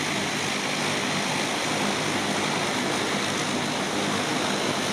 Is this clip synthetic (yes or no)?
no